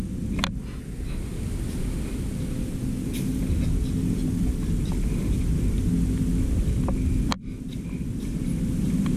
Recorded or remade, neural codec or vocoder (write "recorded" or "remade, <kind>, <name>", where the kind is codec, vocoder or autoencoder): recorded